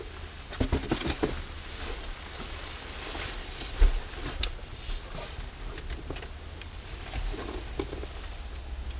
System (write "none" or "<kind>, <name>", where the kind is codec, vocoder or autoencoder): none